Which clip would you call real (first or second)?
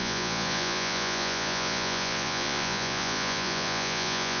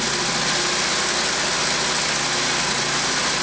second